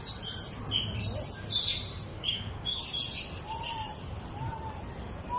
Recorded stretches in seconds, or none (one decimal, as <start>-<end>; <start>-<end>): 0.0-2.1; 2.8-5.4